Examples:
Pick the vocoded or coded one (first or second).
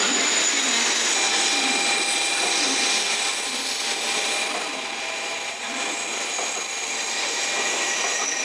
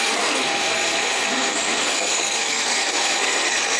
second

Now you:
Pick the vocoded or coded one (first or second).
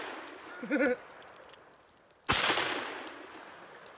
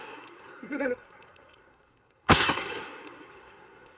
second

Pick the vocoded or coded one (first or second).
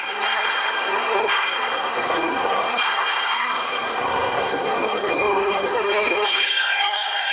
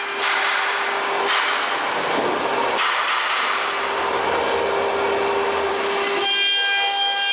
first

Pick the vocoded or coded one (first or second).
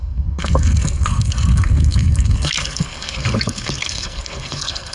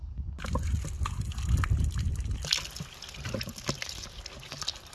first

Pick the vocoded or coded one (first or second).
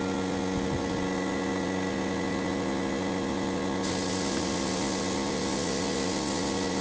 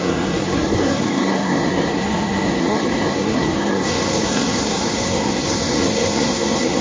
second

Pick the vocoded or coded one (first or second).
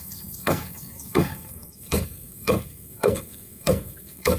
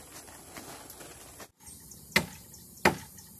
first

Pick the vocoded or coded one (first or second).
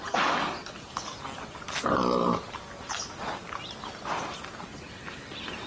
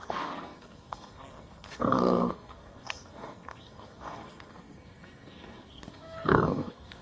second